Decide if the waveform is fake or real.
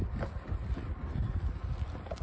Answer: real